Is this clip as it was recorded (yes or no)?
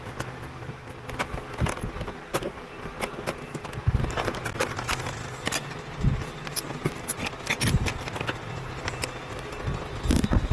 yes